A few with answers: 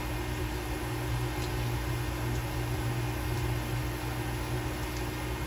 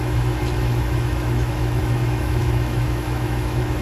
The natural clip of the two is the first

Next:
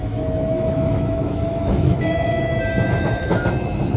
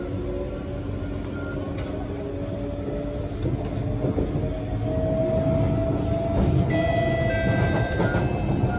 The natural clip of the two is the second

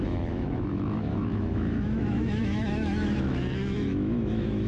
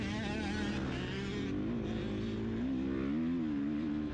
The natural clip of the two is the second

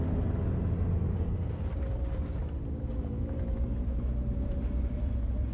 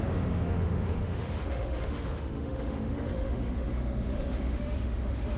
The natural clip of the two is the first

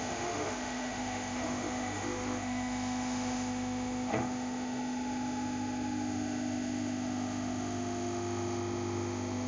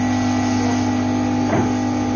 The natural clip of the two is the second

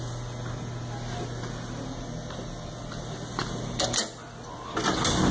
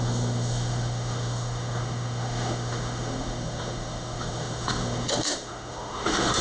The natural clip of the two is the first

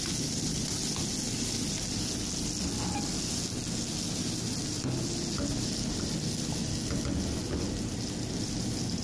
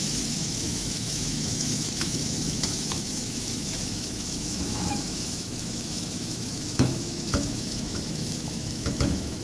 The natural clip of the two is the first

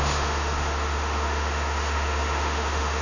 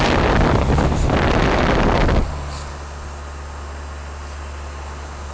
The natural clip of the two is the second